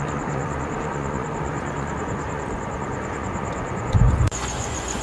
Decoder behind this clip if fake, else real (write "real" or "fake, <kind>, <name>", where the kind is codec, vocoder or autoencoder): fake, vocoder, Vocos